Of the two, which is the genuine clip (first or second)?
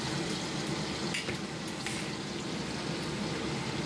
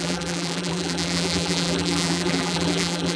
first